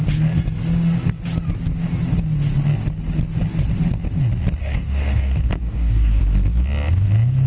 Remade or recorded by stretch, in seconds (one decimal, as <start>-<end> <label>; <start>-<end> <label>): 0.0-4.6 recorded; 4.6-6.2 remade; 6.2-7.5 recorded